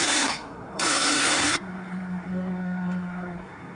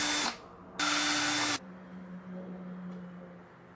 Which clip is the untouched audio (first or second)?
second